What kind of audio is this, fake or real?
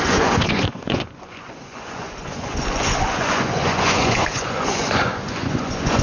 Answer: fake